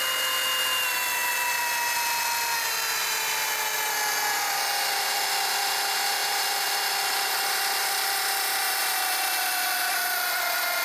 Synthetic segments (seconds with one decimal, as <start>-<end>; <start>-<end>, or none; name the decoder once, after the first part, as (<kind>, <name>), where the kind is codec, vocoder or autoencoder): none